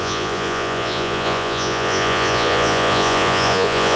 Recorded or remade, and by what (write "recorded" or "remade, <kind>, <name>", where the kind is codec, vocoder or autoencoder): remade, vocoder, Vocos